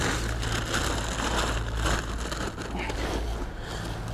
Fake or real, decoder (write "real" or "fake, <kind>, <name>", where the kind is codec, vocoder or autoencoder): real